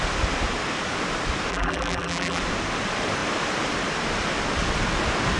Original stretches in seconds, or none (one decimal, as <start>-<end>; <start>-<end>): 0.0-1.5; 2.4-5.4